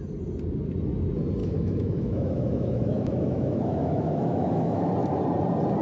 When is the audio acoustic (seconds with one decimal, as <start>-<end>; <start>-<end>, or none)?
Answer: 0.0-1.4; 4.9-5.8